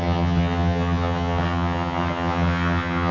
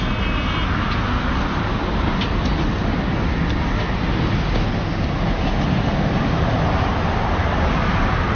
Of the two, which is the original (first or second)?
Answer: second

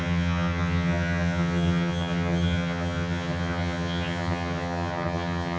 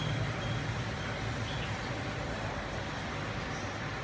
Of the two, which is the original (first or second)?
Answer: second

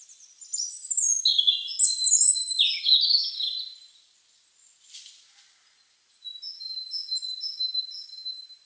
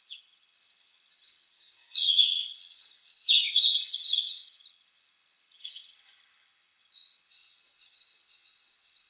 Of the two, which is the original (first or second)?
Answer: first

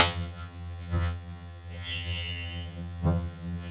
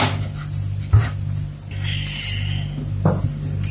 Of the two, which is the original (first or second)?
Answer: second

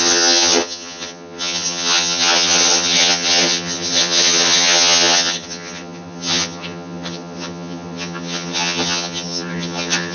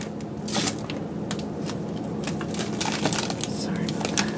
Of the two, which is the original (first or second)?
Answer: second